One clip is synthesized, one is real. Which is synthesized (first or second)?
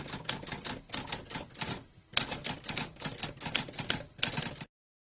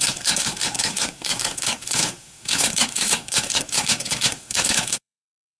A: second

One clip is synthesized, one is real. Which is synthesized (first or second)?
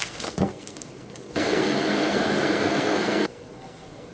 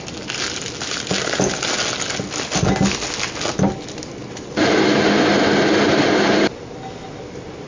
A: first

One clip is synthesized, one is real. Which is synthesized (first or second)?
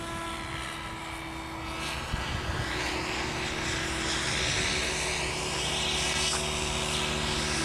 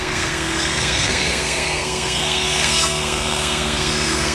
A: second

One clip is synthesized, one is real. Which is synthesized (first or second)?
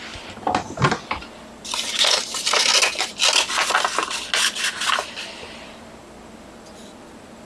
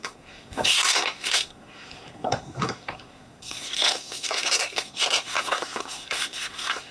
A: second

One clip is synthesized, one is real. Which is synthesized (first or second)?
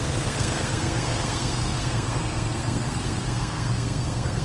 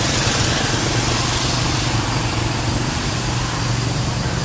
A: first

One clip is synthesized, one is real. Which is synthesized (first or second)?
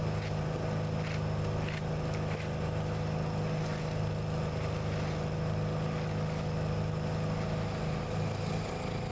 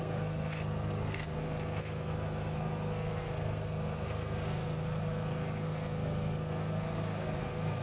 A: second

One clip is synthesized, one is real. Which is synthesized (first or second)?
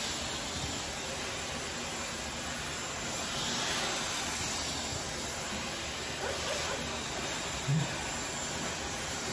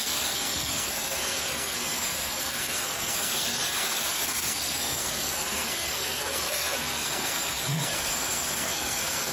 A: second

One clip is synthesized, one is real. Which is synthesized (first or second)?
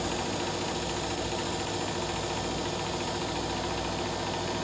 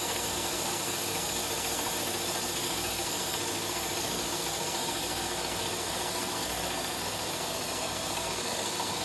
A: second